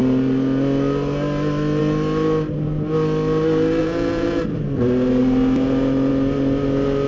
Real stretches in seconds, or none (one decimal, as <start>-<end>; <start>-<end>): 0.0-3.8; 4.4-7.1